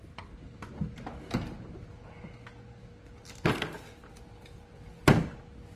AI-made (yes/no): no